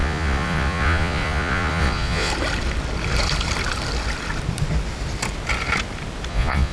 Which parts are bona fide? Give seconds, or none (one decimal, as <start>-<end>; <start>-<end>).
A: 2.3-6.3